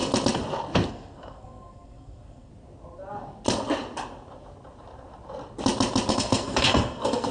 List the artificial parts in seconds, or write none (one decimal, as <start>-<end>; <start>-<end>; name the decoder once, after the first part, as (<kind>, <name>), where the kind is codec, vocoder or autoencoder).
0.9-2.5 (codec, SNAC); 6.1-7.3